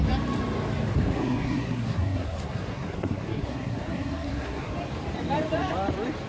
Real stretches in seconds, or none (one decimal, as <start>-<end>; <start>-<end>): 0.0-0.9; 4.7-6.3